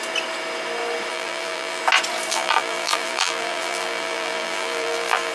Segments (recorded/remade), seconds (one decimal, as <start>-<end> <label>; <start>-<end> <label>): 0.0-1.1 recorded; 1.1-1.8 remade; 1.8-2.3 recorded; 2.3-5.3 remade